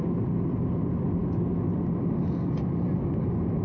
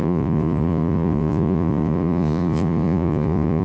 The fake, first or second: second